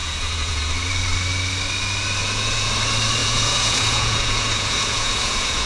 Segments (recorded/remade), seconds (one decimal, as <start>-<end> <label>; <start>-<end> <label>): 0.0-0.7 remade; 0.7-2.2 recorded; 2.2-2.7 remade; 2.7-3.2 recorded; 3.2-5.7 remade